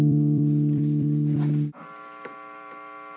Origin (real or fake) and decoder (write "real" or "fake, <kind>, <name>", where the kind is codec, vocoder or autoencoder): fake, vocoder, BigVGAN v2